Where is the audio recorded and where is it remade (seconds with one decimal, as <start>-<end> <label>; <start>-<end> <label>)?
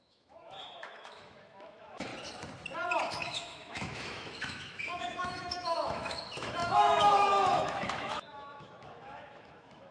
0.0-2.1 remade; 2.1-3.1 recorded; 3.1-9.9 remade